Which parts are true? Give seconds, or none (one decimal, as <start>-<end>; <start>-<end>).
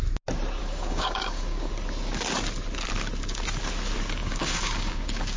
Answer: 0.0-0.6; 1.7-4.2